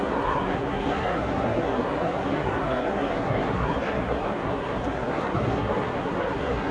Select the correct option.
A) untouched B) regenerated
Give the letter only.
B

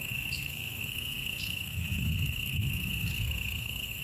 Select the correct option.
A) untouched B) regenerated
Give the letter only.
B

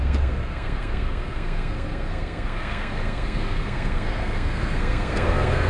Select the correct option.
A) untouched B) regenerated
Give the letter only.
B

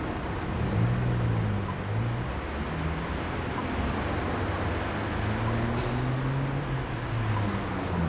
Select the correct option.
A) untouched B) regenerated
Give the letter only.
A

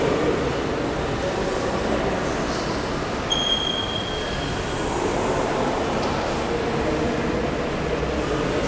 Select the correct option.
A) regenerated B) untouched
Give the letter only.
B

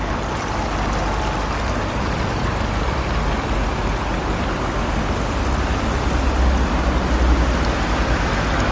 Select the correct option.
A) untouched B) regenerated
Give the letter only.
A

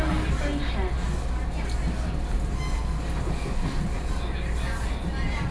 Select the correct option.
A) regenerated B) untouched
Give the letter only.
B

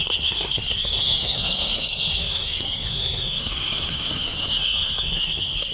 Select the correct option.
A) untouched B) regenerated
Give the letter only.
B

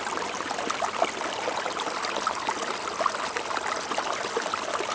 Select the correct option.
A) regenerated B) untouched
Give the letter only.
B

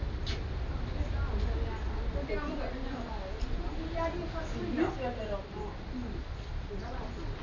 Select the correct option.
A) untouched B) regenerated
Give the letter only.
A